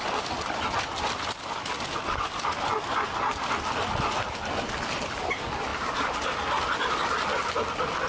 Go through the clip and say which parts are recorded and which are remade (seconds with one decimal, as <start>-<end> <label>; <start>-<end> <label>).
0.0-8.1 recorded